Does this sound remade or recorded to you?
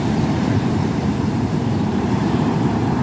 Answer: remade